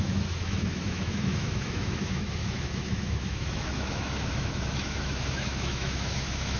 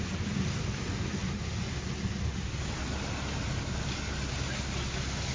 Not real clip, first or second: first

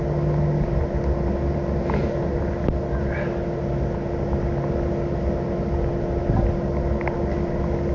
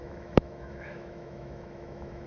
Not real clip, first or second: second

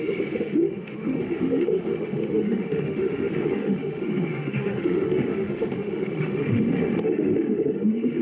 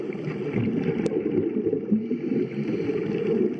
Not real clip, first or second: first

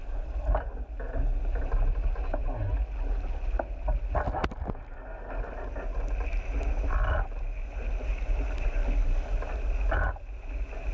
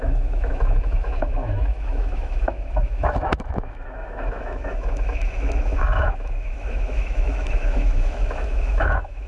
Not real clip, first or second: second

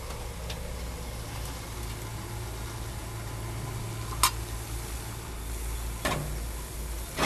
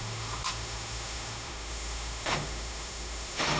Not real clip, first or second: second